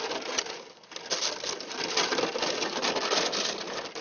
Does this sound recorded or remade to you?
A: recorded